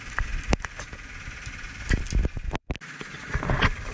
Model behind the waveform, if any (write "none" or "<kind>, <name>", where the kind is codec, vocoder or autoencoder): none